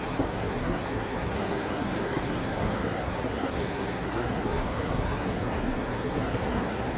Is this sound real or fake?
fake